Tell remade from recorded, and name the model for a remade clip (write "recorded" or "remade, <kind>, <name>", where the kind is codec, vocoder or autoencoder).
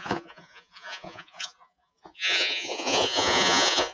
remade, vocoder, Vocos